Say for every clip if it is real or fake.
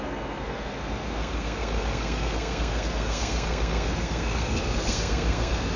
fake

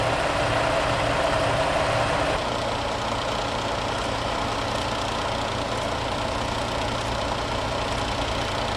real